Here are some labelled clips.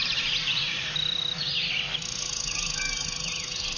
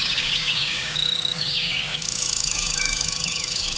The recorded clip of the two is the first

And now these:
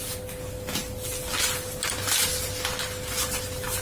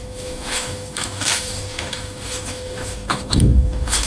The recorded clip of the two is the first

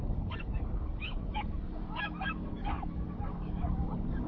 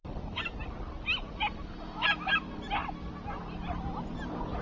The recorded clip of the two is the second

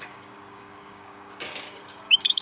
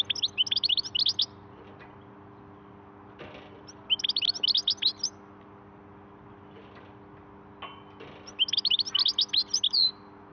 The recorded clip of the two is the second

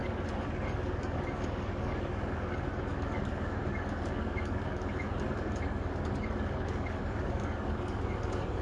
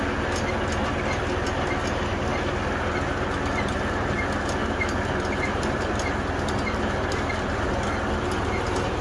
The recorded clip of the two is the second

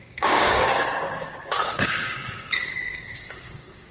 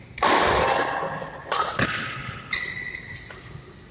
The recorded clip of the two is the second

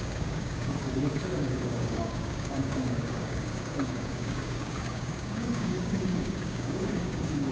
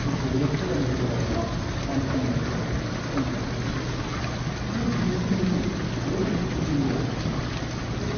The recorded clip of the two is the second